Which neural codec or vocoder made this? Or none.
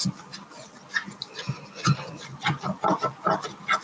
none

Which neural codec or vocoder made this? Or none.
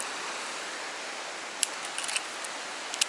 none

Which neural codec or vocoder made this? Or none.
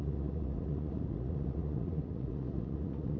vocoder, Vocos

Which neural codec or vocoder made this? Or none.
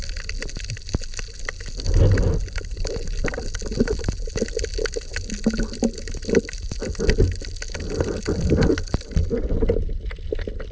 none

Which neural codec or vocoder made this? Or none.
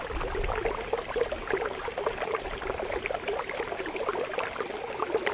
none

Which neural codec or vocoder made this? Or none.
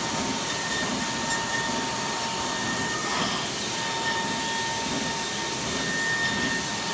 none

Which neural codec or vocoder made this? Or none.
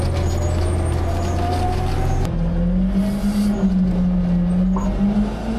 none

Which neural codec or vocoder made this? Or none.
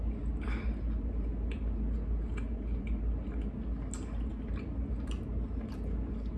none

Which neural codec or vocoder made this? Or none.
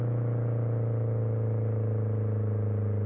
none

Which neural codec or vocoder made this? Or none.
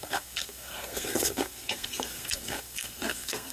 codec, SNAC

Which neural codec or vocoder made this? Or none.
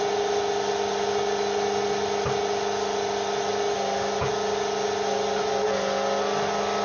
none